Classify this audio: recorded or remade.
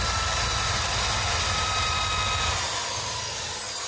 recorded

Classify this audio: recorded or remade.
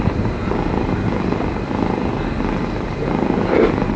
recorded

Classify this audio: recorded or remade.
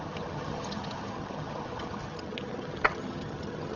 remade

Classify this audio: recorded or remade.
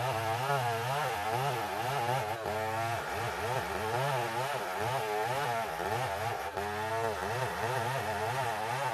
recorded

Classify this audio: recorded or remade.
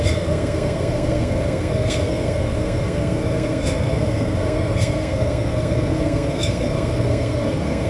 remade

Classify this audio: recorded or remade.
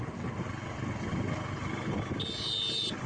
recorded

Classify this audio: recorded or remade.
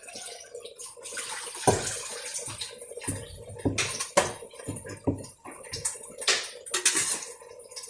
recorded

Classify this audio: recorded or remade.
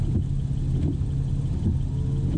recorded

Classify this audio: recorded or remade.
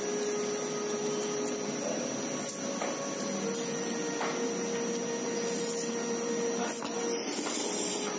recorded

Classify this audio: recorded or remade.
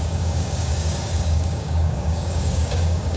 remade